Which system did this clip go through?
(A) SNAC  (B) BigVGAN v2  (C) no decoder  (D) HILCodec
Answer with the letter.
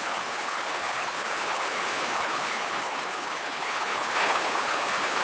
D